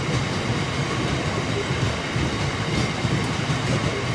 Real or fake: real